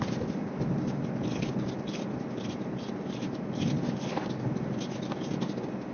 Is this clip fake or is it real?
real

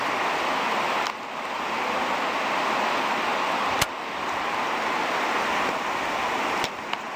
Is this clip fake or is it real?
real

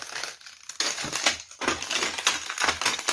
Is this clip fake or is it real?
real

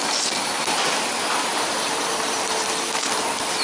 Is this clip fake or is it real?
fake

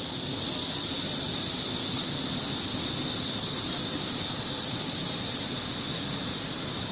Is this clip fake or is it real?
real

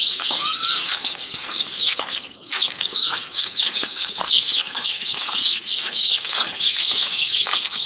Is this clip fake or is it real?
fake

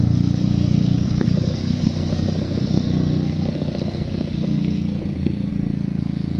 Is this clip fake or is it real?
fake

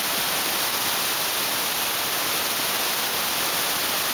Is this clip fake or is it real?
real